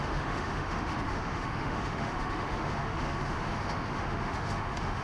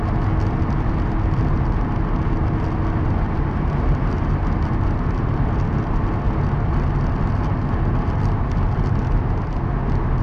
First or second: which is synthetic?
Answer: first